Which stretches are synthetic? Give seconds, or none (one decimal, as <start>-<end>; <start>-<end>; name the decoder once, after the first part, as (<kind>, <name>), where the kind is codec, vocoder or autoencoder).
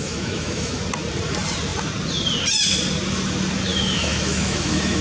0.0-0.8 (autoencoder, DAC-VAE); 3.7-5.0